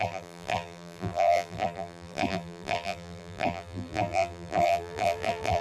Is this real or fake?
fake